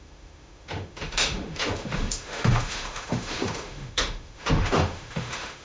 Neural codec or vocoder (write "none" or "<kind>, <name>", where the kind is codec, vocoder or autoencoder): autoencoder, DAC-VAE